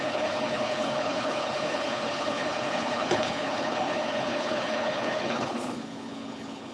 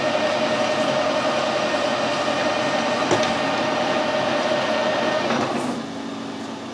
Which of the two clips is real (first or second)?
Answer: second